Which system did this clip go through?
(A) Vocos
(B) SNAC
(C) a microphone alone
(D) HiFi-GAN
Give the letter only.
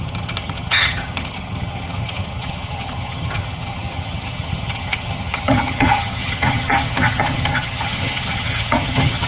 D